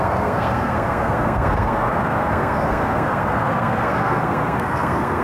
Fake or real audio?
fake